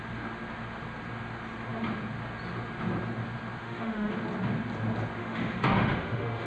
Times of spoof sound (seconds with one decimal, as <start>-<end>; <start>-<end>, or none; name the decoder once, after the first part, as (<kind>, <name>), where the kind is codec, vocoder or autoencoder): 3.6-4.1 (autoencoder, DAC-VAE); 5.2-6.5